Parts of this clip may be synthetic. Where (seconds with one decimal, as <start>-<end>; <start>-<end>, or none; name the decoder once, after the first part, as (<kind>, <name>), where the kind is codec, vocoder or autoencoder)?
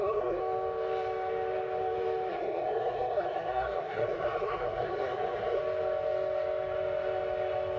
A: 0.0-0.4 (codec, SNAC); 2.3-5.6